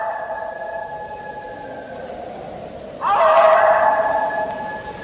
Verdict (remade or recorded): recorded